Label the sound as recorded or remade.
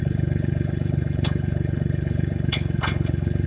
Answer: remade